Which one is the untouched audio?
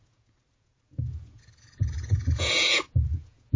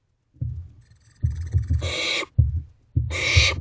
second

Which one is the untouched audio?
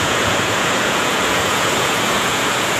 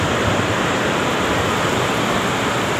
second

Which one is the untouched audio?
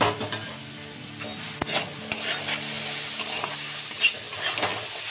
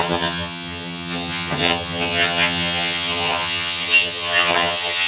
first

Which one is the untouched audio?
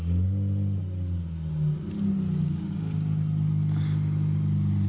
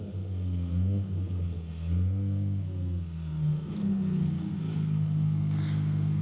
first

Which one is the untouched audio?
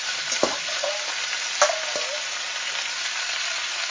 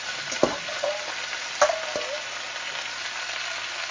second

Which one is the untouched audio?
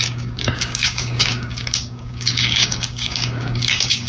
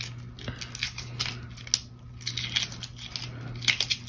second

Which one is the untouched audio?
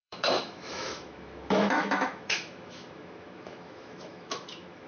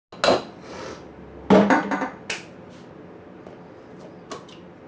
second